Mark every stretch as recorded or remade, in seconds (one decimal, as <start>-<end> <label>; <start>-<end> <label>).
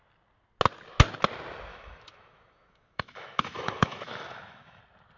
0.0-1.7 recorded; 1.7-4.8 remade; 4.8-5.2 recorded